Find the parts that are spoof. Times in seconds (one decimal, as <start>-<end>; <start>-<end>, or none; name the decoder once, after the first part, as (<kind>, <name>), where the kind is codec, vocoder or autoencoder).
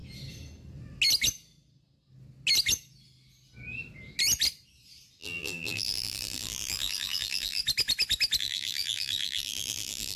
5.2-7.6 (vocoder, BigVGAN v2); 8.4-10.2